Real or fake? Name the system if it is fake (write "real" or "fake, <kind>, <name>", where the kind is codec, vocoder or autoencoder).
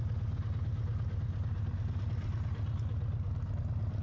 real